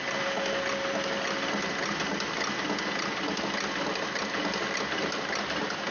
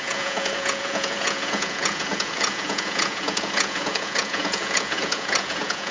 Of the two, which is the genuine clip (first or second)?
first